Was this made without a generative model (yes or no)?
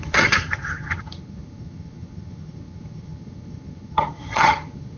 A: no